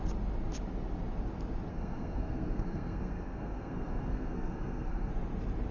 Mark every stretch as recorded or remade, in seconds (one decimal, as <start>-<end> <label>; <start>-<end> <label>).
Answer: 0.0-1.7 recorded; 1.7-5.1 remade; 5.1-5.7 recorded